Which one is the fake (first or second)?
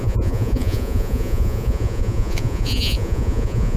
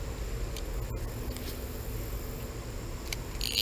first